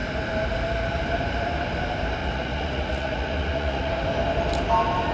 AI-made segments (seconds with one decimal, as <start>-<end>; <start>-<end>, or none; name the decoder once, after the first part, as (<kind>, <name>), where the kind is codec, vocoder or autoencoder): 2.2-3.9 (vocoder, Vocos)